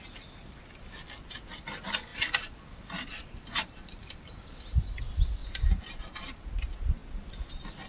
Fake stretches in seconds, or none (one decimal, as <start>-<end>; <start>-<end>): 2.1-5.0; 5.4-6.5